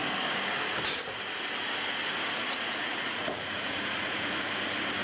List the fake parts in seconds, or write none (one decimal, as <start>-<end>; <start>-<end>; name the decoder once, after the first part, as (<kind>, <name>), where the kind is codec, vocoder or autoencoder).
2.4-4.5 (vocoder, Vocos)